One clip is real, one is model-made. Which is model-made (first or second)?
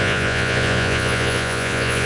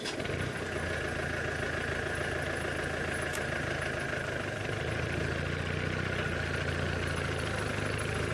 first